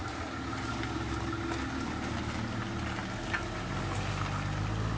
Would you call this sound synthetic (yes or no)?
no